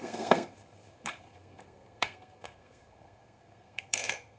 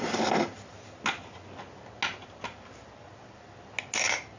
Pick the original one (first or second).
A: second